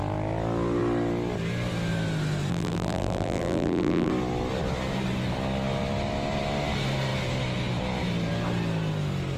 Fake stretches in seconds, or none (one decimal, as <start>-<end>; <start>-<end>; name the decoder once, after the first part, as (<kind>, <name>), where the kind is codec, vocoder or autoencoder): 2.5-4.1 (vocoder, BigVGAN v2)